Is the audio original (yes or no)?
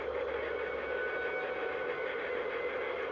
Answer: yes